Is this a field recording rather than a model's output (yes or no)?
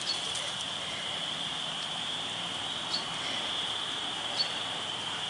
no